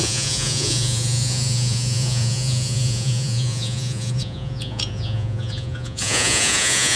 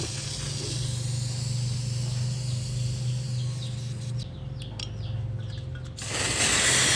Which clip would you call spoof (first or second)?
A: first